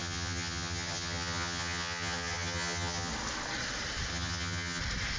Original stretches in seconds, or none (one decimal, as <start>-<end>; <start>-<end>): 3.1-4.1; 4.8-5.2